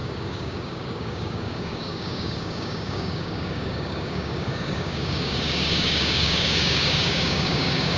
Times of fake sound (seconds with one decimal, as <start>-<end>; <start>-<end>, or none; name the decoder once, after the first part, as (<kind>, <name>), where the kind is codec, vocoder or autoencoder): 0.0-8.0 (codec, DAC)